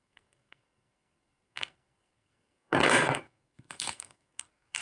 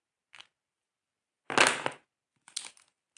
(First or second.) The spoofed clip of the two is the first